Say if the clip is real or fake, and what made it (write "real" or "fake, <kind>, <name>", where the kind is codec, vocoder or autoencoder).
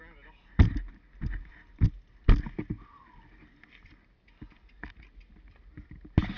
real